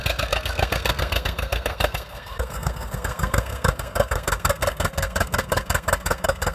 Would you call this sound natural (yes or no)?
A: no